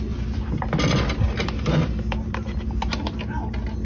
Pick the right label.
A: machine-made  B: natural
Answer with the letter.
B